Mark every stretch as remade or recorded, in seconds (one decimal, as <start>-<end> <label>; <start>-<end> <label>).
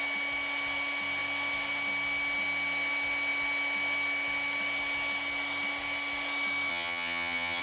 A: 0.0-6.7 recorded; 6.7-7.6 remade